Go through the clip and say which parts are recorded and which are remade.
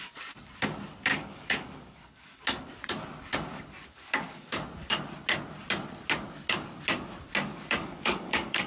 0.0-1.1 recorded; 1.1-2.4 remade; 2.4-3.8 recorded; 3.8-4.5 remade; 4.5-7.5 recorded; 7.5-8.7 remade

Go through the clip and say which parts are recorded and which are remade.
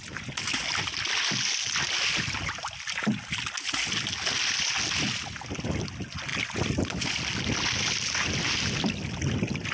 0.0-9.7 recorded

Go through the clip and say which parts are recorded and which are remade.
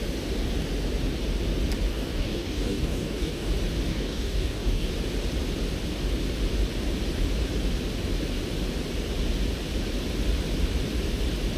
0.0-1.9 recorded; 1.9-3.5 remade; 3.5-3.9 recorded; 3.9-4.9 remade; 4.9-11.6 recorded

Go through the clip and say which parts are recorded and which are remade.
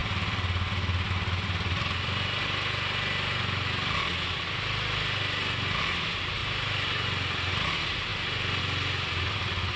0.0-9.8 recorded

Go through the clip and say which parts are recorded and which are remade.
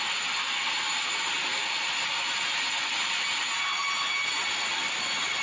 0.0-5.4 recorded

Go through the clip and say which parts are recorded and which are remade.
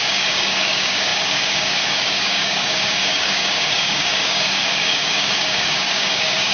0.0-6.5 remade